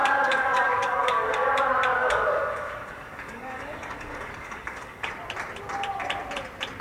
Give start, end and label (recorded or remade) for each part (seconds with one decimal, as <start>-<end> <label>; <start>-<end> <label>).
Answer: 0.0-1.5 remade; 1.5-2.0 recorded; 2.0-5.1 remade; 5.1-6.8 recorded

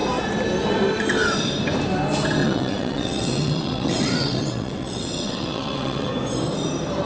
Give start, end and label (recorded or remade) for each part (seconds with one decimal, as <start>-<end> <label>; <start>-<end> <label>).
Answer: 0.0-2.4 recorded; 2.4-6.1 remade; 6.1-7.1 recorded

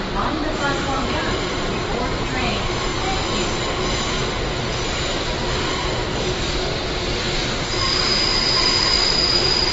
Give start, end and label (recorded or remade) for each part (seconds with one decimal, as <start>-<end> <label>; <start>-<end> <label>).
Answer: 0.0-2.9 remade; 2.9-8.2 recorded; 8.2-9.7 remade

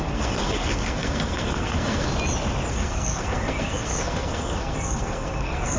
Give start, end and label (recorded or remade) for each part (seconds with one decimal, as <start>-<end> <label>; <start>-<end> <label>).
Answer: 0.0-2.1 remade; 2.1-2.7 recorded; 2.7-5.8 remade

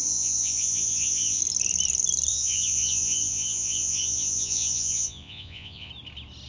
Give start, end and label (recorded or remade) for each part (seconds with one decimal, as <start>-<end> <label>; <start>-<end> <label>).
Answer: 0.0-1.4 remade; 1.4-2.3 recorded; 2.3-5.9 remade; 5.9-6.5 recorded

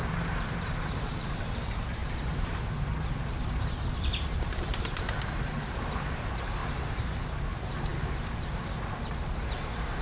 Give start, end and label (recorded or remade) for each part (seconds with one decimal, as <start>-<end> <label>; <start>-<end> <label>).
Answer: 0.0-10.0 remade

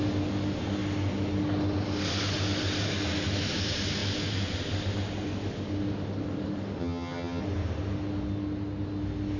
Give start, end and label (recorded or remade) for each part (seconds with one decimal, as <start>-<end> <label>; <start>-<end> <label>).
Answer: 0.0-6.8 recorded; 6.8-7.4 remade; 7.4-9.4 recorded

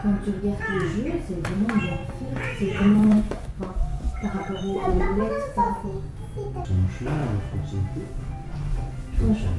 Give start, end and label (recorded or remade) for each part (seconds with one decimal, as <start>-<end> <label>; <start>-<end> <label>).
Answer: 0.0-2.0 recorded; 2.0-5.2 remade; 5.2-9.6 recorded